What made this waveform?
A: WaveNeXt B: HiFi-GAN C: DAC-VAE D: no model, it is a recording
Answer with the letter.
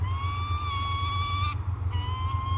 D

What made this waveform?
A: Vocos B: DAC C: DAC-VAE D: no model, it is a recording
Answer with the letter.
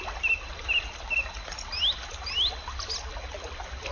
D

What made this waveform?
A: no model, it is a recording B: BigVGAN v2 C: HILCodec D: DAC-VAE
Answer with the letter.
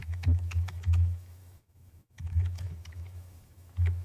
D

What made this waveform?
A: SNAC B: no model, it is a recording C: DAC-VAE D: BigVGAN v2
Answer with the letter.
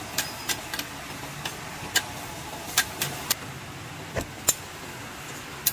B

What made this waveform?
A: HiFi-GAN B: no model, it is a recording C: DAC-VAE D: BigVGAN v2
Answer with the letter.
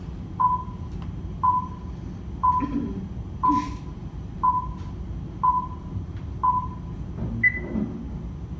B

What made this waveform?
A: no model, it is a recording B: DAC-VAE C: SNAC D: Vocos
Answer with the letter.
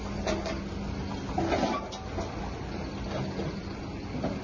A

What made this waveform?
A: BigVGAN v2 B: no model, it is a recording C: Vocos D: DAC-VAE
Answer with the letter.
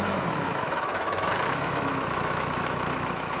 D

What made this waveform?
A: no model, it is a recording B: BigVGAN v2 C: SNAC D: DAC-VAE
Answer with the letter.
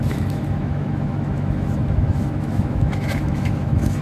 D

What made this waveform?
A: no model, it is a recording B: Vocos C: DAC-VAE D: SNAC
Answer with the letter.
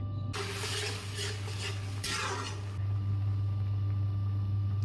A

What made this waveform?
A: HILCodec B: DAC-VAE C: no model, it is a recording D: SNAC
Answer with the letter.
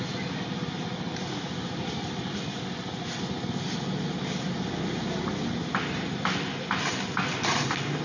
C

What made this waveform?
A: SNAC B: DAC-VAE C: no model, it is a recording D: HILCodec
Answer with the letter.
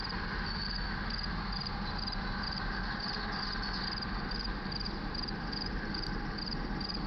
C